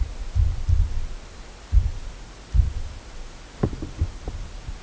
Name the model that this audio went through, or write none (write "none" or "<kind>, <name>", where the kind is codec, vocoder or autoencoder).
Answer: vocoder, BigVGAN v2